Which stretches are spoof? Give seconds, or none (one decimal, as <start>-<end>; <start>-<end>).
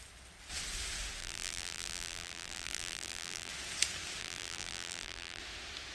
1.2-3.5; 4.2-5.4